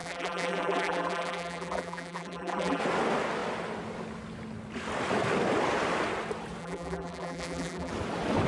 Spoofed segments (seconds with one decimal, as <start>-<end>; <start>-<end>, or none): 0.0-2.8; 6.6-7.9

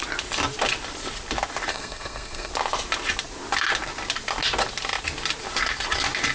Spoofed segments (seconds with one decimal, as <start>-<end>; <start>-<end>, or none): 1.7-2.5

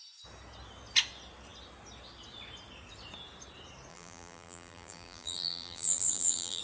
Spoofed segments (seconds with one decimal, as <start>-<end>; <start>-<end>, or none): 3.9-6.6

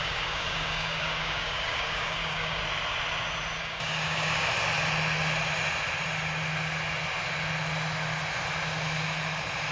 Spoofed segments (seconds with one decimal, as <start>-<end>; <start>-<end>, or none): 0.0-2.6; 3.6-4.5